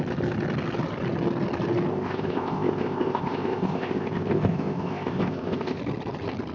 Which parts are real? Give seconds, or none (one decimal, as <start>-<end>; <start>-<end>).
0.0-1.9; 5.8-6.5